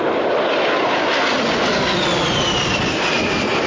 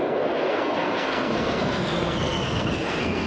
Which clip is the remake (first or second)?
second